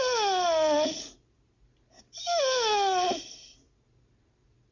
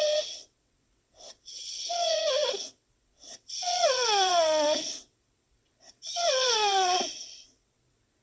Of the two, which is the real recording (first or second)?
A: first